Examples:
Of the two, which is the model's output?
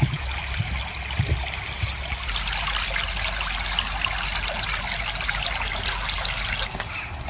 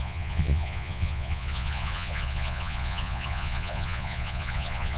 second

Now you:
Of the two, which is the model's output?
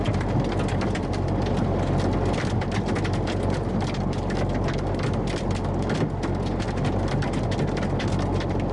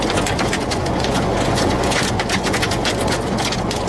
second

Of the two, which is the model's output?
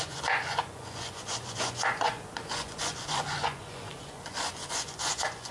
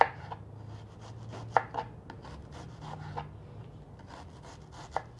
first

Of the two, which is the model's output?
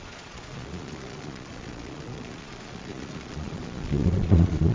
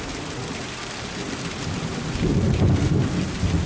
first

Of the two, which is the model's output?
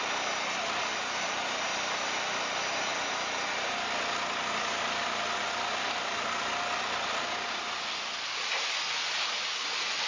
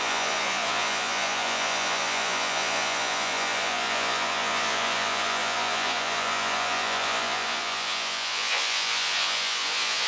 second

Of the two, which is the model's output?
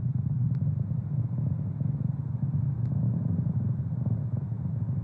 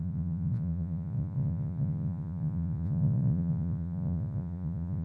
second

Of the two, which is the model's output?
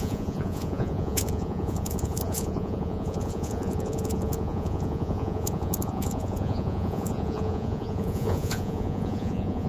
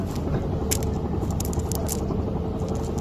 first